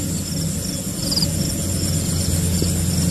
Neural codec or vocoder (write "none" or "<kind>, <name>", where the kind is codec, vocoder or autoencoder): none